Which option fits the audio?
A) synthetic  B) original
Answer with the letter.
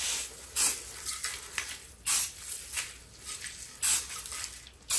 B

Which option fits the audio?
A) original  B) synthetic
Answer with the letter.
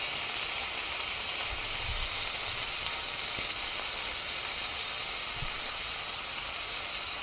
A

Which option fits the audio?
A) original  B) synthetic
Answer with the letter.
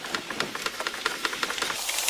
A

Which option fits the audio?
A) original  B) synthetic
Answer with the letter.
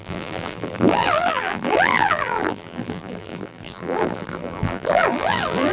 B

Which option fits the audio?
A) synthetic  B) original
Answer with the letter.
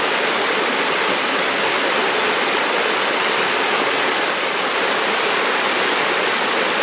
B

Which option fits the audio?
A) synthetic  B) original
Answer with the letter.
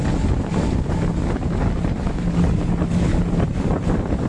B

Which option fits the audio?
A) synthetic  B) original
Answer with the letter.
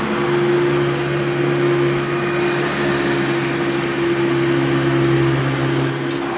B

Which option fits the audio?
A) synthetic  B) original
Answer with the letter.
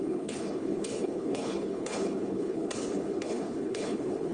A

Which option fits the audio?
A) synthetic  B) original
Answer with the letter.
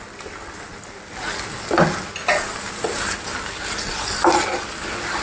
B